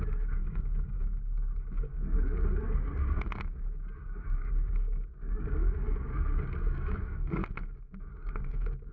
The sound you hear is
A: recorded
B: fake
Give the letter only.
B